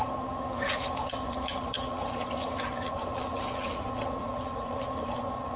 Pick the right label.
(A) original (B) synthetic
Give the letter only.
B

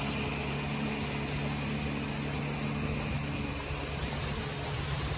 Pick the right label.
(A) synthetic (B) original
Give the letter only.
B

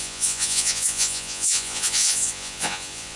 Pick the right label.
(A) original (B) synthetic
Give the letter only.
B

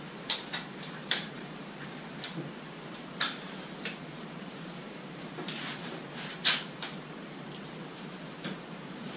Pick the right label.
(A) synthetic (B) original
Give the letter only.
A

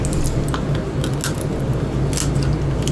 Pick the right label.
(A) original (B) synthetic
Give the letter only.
A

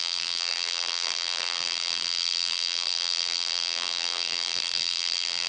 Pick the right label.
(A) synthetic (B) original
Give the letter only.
A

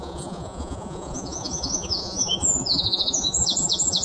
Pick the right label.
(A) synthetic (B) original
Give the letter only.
A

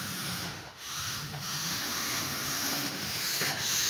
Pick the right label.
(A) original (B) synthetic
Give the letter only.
B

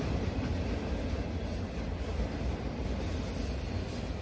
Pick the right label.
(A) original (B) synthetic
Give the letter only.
A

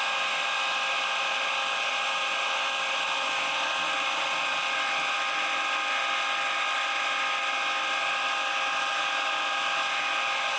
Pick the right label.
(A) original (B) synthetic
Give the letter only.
A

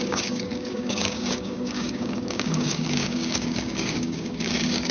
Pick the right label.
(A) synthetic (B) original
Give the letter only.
A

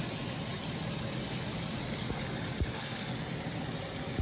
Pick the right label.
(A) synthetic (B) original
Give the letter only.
B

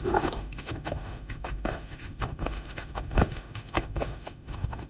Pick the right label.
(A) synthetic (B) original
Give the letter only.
A